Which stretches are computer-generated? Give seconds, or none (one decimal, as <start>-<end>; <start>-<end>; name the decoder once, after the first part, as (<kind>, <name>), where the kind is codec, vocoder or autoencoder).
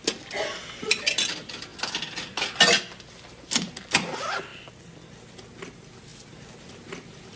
none